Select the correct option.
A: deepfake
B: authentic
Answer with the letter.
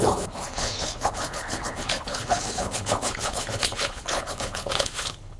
A